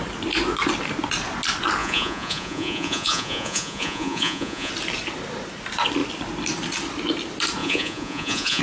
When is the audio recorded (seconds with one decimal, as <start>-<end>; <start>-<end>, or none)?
0.0-1.8; 4.7-7.6